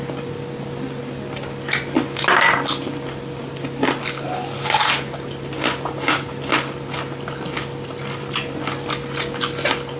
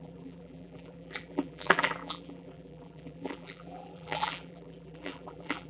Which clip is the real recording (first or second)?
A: first